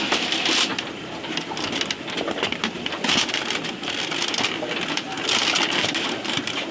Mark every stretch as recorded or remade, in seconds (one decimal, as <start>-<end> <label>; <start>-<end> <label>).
0.0-0.7 recorded; 0.7-1.8 remade; 1.8-5.8 recorded; 5.8-6.7 remade